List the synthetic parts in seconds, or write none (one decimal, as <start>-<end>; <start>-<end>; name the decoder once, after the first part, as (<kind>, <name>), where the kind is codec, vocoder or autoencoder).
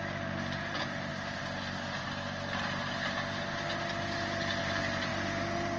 none